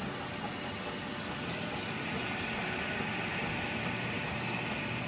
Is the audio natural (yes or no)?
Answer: yes